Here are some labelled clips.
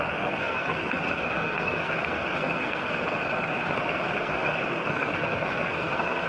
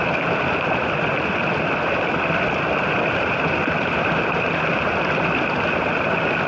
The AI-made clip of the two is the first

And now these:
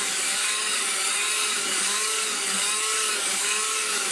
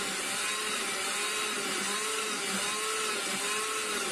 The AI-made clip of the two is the first